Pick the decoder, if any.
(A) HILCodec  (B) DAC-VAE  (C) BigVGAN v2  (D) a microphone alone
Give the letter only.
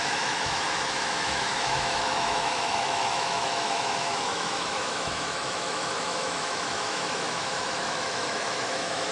B